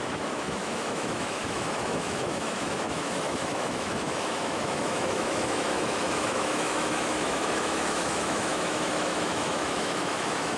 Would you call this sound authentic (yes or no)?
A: no